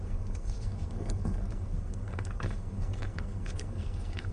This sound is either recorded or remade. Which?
remade